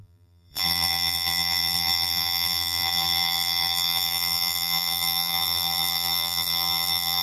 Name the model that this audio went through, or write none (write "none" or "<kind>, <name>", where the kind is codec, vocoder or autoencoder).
vocoder, BigVGAN v2